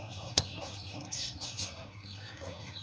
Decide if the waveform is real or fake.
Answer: fake